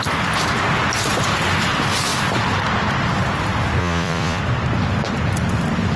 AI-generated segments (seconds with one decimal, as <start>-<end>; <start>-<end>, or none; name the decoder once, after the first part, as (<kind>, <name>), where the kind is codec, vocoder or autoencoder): 3.8-4.4 (vocoder, Vocos)